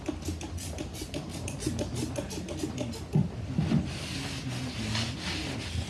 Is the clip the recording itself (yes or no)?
yes